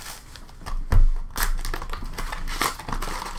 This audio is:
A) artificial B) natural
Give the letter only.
B